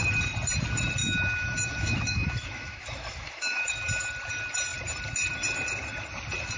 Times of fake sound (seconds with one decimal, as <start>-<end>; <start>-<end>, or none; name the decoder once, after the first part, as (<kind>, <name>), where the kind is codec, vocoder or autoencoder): 1.0-3.7 (autoencoder, DAC-VAE)